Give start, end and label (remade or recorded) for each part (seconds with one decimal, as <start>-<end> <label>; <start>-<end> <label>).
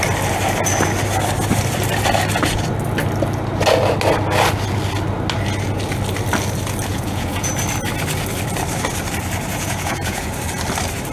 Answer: 0.0-6.9 recorded; 6.9-7.5 remade; 7.5-9.5 recorded; 9.5-10.3 remade; 10.3-11.1 recorded